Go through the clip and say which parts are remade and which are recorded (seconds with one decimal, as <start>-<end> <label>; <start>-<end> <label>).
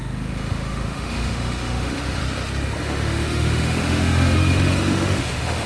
0.0-2.2 remade; 2.2-2.8 recorded; 2.8-5.7 remade